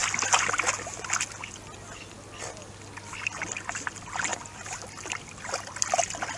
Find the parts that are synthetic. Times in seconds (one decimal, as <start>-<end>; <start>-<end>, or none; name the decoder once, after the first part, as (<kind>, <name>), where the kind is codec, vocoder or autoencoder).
none